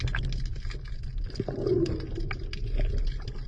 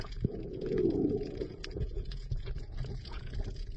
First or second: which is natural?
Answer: first